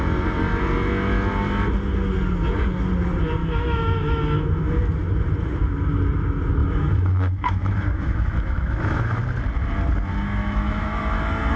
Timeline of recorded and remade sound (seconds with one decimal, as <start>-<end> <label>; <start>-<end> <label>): 0.0-3.4 recorded; 3.4-4.8 remade; 4.8-6.6 recorded; 6.6-9.2 remade; 9.2-10.4 recorded; 10.4-11.2 remade; 11.2-11.6 recorded